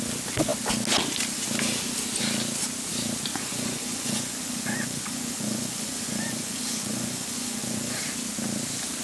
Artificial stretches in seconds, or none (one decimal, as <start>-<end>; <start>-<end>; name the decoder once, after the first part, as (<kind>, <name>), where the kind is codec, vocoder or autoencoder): 3.3-8.0 (vocoder, Vocos)